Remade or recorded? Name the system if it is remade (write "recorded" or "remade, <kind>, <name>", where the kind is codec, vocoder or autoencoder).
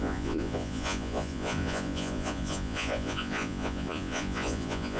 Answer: remade, vocoder, Vocos